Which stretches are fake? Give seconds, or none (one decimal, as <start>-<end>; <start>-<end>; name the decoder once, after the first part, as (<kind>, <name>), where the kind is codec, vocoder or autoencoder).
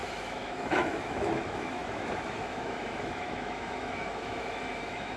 0.0-5.2 (autoencoder, DAC-VAE)